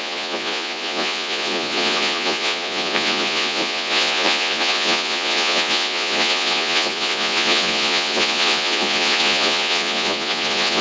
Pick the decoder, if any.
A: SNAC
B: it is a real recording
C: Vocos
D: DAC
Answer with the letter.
C